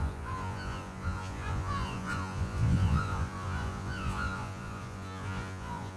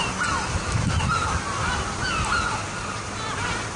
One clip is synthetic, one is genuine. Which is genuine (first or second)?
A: second